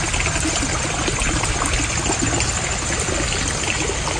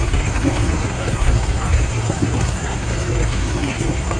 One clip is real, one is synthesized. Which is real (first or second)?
first